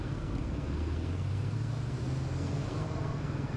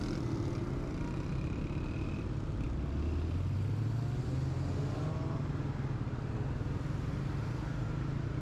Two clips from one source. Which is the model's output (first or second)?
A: first